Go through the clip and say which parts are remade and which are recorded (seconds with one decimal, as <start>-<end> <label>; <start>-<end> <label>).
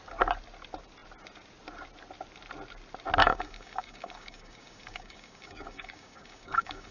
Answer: 0.0-3.2 recorded; 3.2-6.9 remade